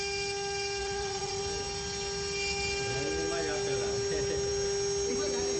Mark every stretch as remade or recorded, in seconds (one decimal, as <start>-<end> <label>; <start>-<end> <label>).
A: 0.0-0.8 recorded; 0.8-1.4 remade; 1.4-5.6 recorded